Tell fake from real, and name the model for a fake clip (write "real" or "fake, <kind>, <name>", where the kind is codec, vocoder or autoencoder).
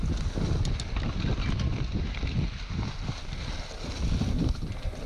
real